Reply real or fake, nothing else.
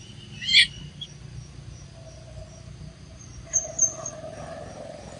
real